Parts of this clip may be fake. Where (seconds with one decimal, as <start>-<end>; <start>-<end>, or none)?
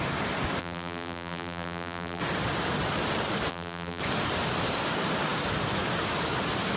0.6-2.2; 3.5-4.0